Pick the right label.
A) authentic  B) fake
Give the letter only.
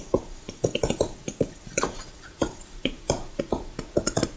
B